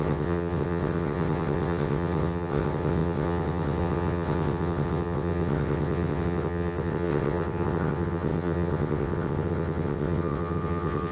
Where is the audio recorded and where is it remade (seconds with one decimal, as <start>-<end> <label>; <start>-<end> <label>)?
0.0-11.1 remade